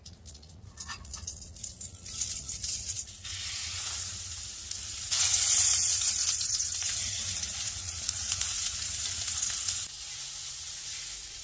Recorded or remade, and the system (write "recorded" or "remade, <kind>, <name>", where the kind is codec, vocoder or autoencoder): remade, vocoder, Vocos